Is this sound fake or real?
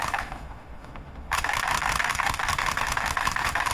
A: fake